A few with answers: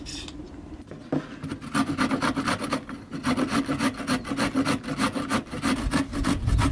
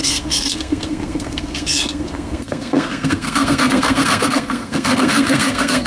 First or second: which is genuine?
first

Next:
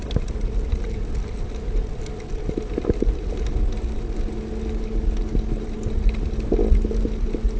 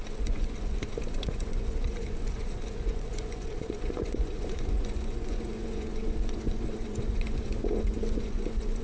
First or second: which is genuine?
first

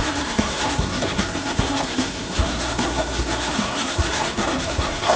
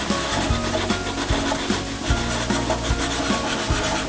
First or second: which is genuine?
second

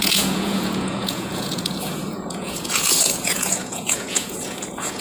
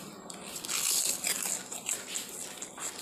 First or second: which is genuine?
second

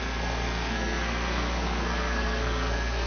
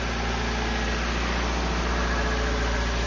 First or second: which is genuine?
second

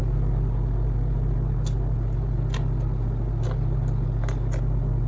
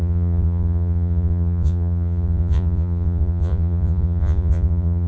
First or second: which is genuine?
first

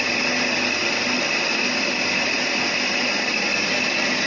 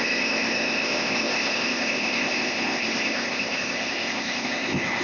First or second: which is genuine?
first